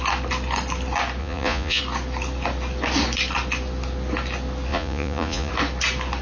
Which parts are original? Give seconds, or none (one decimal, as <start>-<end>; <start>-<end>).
0.0-1.2; 1.8-4.7; 5.5-6.2